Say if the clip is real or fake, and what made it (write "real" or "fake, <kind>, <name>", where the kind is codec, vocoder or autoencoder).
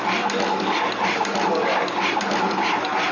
real